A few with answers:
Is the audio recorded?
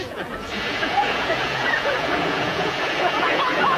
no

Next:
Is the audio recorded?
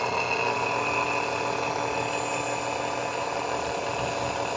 yes